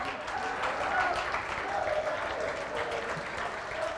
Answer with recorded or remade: recorded